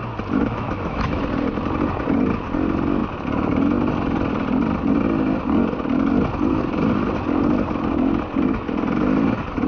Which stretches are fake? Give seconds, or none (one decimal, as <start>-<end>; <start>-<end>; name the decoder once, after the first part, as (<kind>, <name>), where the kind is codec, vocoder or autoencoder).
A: 0.4-1.2 (autoencoder, DAC-VAE)

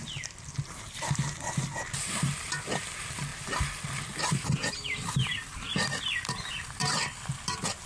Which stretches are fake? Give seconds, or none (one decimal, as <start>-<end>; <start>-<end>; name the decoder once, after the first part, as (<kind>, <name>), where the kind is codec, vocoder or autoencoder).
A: none

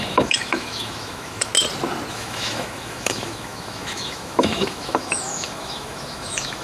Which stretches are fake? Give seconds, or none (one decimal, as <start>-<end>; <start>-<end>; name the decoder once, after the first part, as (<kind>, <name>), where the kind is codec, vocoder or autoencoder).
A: 0.0-1.5 (autoencoder, DAC-VAE); 2.1-6.6

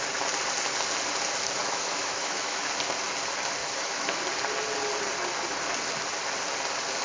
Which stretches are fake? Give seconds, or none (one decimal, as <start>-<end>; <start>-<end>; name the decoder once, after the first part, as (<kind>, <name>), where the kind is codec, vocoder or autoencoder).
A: 1.6-2.6 (autoencoder, DAC-VAE); 3.6-4.2

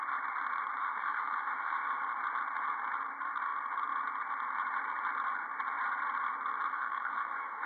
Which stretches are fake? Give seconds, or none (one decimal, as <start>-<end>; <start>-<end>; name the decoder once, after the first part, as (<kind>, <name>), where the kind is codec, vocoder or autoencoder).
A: 0.8-2.0 (autoencoder, DAC-VAE); 6.7-7.7

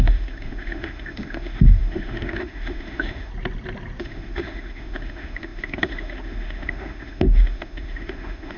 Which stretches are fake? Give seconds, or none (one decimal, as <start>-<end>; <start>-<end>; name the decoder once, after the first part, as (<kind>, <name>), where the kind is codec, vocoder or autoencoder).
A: 0.0-3.3 (autoencoder, DAC-VAE); 4.0-8.6

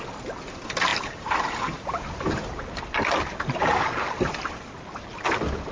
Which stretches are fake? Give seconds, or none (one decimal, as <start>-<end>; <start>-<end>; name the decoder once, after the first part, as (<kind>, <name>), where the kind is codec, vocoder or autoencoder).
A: none

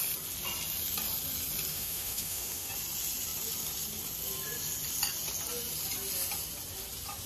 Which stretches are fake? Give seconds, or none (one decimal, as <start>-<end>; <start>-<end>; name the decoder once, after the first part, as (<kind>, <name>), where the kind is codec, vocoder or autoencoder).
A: 1.7-2.7 (autoencoder, DAC-VAE)